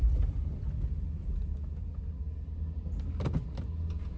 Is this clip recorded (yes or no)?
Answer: yes